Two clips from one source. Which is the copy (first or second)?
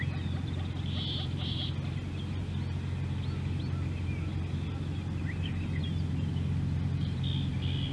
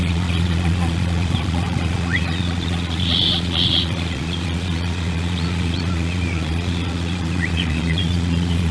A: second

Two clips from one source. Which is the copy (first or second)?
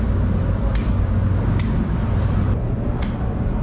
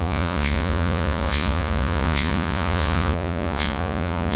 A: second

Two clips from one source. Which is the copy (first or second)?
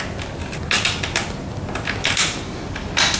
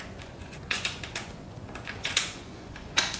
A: second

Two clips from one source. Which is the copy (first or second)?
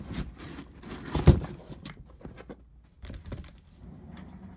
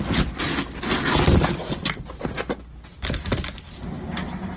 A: first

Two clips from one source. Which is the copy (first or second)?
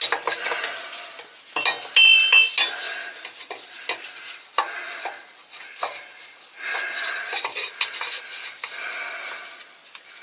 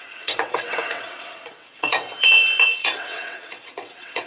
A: second